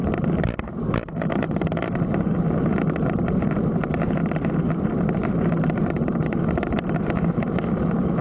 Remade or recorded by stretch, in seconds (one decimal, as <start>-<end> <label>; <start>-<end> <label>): 0.0-8.2 recorded